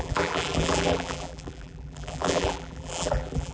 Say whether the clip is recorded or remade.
remade